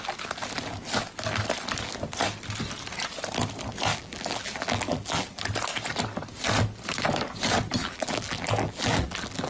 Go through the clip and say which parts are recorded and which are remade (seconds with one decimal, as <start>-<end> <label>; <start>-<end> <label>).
0.0-3.9 recorded; 3.9-5.4 remade; 5.4-7.8 recorded; 7.8-9.5 remade